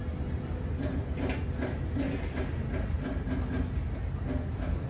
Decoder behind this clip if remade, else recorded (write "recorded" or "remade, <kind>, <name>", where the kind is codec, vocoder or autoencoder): recorded